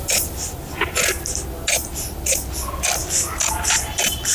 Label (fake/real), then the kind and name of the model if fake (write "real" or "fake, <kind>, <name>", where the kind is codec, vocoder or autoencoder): real